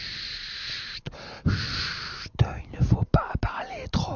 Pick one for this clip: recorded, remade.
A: recorded